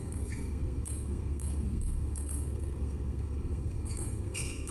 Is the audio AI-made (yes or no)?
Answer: yes